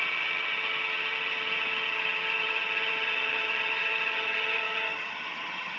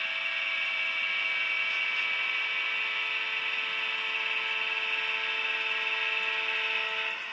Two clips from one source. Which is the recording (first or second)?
second